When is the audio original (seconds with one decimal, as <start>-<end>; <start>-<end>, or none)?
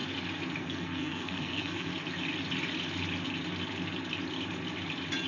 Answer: 0.0-0.6; 1.9-5.3